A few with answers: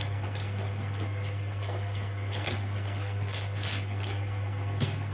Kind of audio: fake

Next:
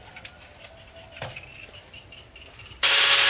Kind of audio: real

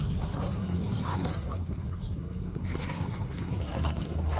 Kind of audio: fake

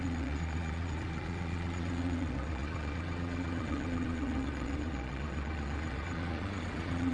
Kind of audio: fake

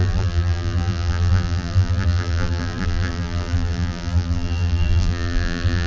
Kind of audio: fake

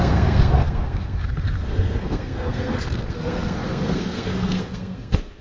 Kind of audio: fake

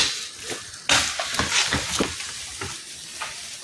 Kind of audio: real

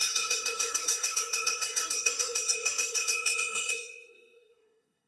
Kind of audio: fake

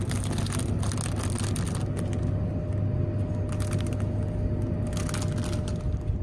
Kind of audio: real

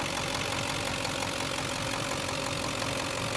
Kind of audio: real